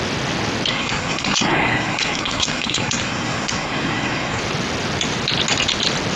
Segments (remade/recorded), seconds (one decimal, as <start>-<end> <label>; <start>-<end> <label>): 0.0-0.7 recorded; 0.7-4.4 remade; 4.4-6.2 recorded